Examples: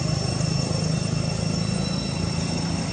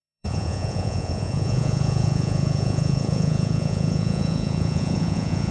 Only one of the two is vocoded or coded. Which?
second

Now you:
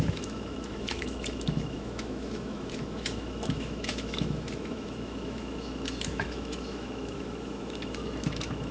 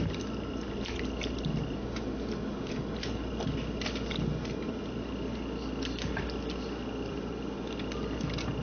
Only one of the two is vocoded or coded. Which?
first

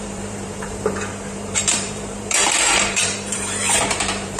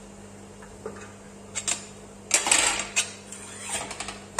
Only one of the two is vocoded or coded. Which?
first